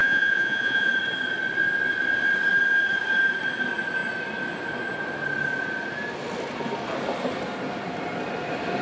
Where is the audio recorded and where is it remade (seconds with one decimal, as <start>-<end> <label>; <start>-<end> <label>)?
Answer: 0.0-0.9 remade; 0.9-8.8 recorded